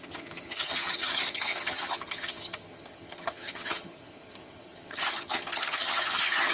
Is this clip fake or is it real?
fake